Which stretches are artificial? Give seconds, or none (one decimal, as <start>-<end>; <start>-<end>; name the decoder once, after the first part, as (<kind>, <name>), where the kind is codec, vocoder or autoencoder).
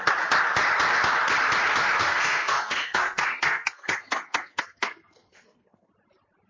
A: 2.0-5.9 (codec, SNAC)